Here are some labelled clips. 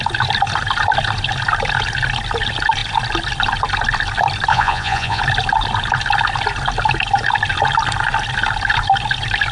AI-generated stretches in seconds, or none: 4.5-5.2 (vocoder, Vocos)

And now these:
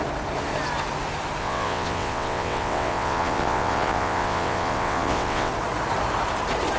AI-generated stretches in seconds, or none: 1.4-5.5 (vocoder, WaveNeXt)

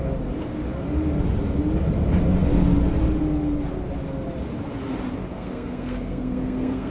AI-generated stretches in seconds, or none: 5.3-6.9 (codec, SNAC)